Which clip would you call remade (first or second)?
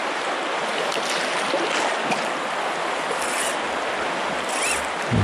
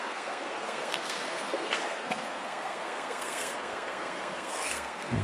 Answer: second